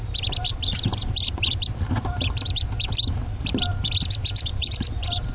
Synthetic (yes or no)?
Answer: yes